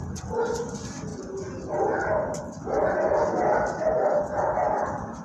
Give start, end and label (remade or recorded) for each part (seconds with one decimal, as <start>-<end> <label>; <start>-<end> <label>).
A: 0.0-5.2 recorded